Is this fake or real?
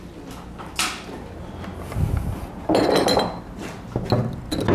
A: real